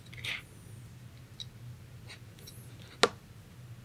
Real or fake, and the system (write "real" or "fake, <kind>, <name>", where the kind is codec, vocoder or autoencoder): real